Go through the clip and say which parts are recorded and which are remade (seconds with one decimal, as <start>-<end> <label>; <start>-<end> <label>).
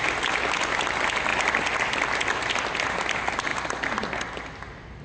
0.0-5.0 recorded